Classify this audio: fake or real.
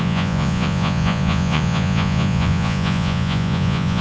fake